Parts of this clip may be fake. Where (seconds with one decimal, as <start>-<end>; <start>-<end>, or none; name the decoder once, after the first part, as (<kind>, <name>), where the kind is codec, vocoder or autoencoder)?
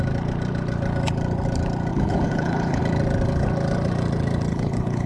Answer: 1.9-2.8 (codec, HILCodec); 4.5-5.1